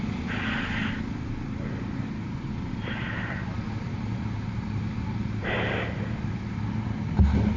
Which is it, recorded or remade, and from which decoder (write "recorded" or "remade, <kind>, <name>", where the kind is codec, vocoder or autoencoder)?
recorded